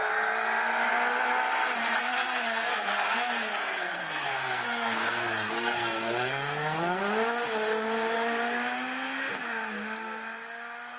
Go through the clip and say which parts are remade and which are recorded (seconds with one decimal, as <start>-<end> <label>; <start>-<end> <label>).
0.0-2.0 recorded; 2.0-7.0 remade; 7.0-11.0 recorded